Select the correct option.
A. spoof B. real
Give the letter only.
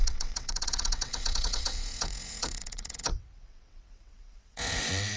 A